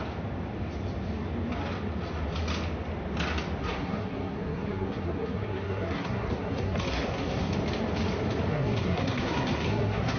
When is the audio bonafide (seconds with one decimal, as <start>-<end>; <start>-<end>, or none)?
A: 0.0-3.6; 7.5-8.5